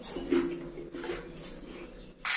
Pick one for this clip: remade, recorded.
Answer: recorded